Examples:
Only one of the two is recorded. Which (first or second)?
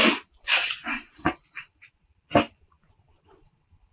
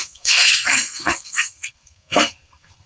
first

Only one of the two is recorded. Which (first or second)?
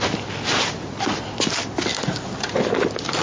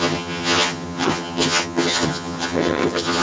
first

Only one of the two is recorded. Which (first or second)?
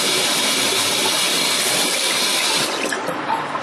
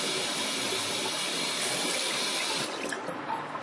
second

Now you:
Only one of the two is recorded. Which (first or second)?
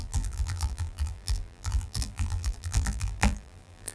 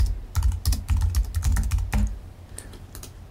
second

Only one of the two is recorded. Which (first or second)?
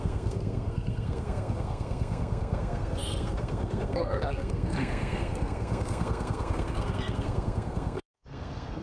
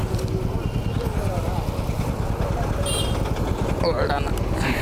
second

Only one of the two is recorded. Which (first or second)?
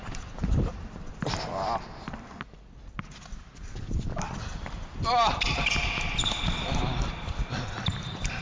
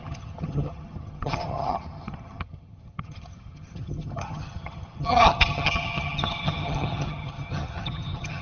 first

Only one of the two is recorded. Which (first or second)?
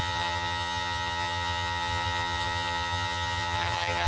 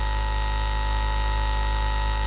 second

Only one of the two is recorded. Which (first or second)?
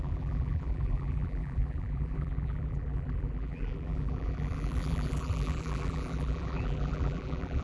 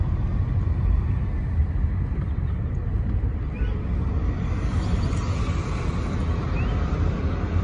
second